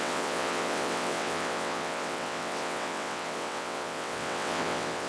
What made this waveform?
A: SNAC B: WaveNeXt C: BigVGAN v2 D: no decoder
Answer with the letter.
B